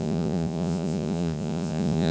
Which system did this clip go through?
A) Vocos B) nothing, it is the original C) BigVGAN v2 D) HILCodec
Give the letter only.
A